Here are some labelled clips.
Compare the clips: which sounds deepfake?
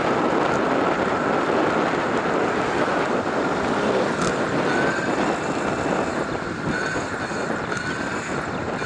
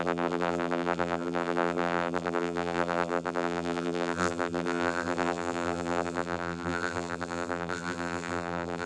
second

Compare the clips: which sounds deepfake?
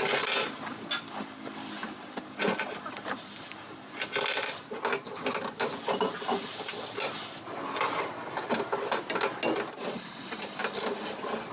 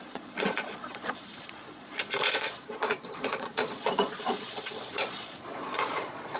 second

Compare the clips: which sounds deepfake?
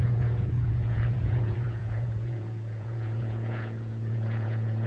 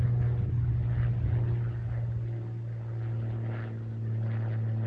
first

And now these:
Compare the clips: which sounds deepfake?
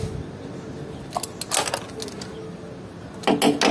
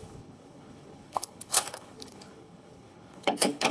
second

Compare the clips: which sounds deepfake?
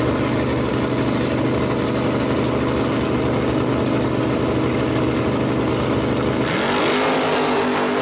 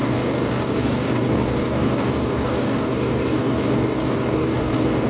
second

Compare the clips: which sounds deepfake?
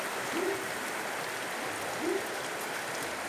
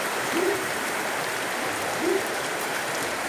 second